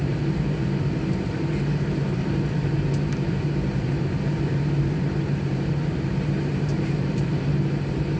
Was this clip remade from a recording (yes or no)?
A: yes